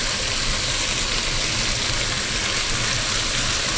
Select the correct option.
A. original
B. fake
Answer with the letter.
A